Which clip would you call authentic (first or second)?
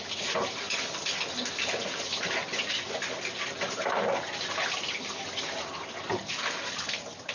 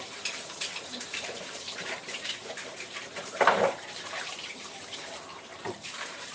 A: first